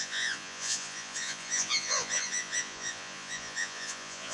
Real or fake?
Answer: fake